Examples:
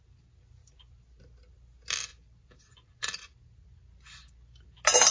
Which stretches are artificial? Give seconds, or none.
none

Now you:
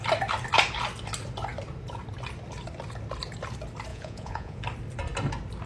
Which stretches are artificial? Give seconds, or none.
3.9-4.6 (vocoder, Vocos)

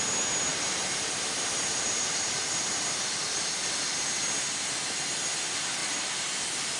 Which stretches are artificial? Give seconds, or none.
0.5-4.4 (vocoder, BigVGAN v2); 5.8-6.3

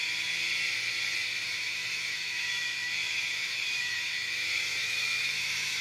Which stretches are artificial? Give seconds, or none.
1.5-5.8 (autoencoder, DAC-VAE)

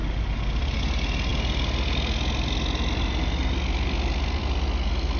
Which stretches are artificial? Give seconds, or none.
none

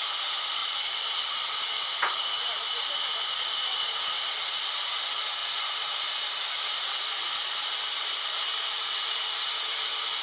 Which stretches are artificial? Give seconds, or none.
none

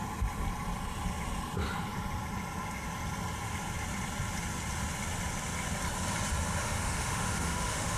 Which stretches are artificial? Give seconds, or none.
6.6-8.0 (autoencoder, DAC-VAE)

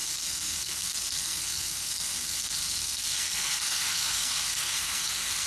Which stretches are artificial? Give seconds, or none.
0.0-5.5 (codec, SNAC)